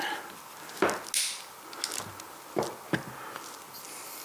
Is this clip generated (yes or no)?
no